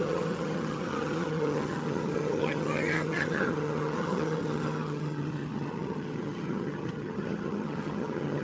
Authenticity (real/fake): fake